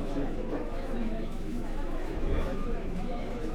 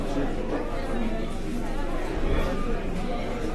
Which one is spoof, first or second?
first